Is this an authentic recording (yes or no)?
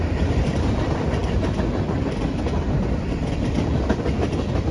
no